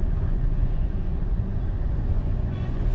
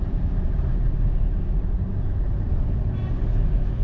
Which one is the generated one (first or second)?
first